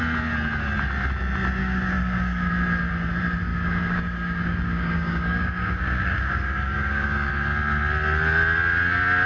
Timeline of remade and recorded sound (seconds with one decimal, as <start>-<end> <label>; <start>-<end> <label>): 0.0-1.6 recorded; 1.6-2.5 remade; 2.5-3.5 recorded; 3.5-7.3 remade; 7.3-9.3 recorded